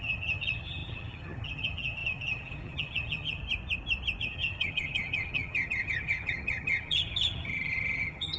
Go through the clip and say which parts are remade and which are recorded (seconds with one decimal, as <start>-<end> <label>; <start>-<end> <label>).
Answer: 0.0-3.4 remade; 3.4-4.2 recorded; 4.2-8.4 remade